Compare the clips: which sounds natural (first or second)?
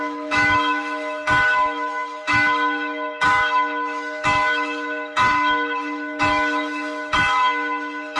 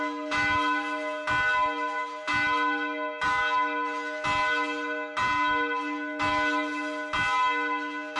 second